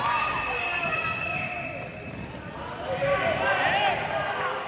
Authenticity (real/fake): real